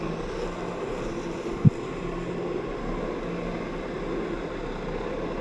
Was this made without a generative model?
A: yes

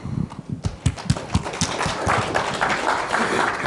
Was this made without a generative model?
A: yes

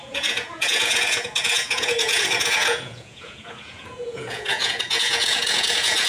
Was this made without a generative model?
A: no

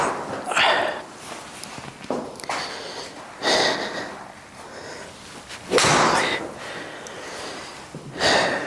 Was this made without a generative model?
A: yes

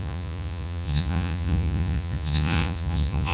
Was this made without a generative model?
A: no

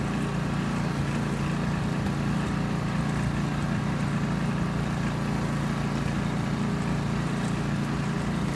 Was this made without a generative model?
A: yes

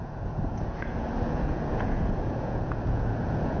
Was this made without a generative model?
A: no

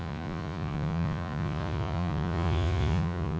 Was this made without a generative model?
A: no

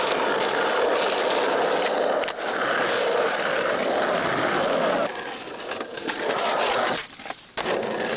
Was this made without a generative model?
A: yes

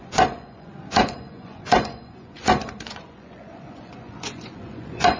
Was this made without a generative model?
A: no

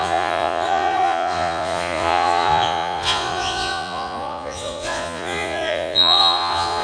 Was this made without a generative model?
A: no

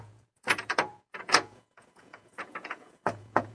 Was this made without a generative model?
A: no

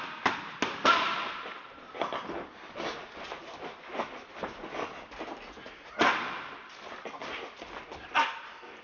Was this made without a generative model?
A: yes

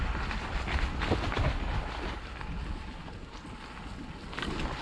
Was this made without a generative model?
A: yes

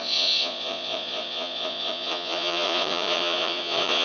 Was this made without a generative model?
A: no